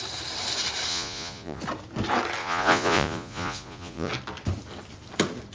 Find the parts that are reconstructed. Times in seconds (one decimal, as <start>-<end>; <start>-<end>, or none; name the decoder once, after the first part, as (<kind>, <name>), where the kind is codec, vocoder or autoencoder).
0.9-1.6 (vocoder, Vocos); 2.4-4.1